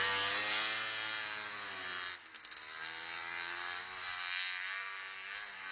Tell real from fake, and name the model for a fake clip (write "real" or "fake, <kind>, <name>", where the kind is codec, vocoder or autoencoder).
real